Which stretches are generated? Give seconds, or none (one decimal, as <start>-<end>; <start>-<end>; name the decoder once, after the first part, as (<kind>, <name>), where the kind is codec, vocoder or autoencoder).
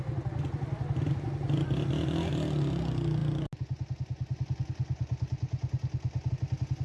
none